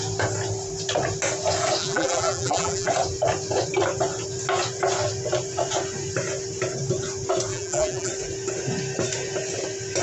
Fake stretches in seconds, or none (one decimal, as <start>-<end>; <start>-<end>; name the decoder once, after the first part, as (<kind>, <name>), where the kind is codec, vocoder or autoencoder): 1.8-2.9 (vocoder, BigVGAN v2); 7.5-8.1